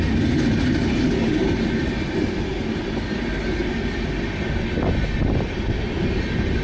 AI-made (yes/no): no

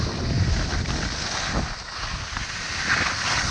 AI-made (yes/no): no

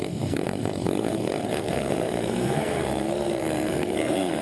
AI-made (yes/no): yes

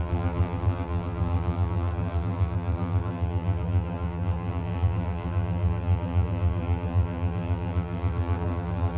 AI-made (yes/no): yes